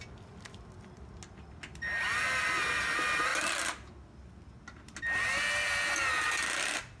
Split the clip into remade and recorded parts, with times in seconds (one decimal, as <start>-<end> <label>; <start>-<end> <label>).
0.0-7.0 recorded